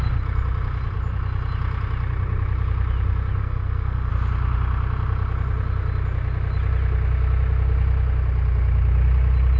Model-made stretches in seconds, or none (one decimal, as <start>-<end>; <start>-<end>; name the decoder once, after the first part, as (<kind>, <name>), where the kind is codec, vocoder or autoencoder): 3.4-4.1 (codec, SNAC)